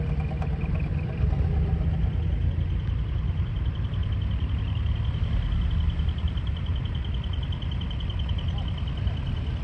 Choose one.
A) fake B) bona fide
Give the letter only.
B